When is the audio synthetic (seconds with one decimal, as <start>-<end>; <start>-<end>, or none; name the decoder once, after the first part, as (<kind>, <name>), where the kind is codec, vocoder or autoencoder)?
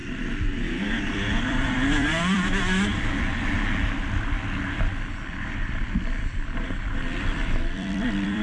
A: 0.9-2.9 (vocoder, BigVGAN v2); 5.1-8.4